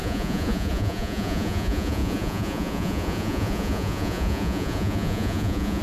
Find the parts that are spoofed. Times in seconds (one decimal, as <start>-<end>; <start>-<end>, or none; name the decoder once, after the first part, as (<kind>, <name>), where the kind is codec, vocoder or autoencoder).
0.0-5.8 (vocoder, Vocos)